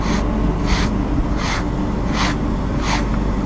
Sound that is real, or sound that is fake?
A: real